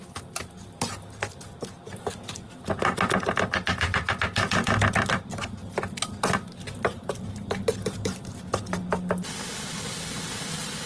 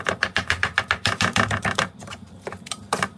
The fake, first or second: second